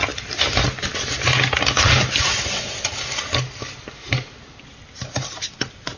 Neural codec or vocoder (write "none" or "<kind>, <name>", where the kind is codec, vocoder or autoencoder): none